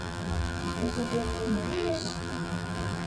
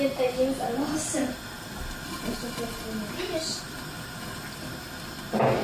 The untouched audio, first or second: second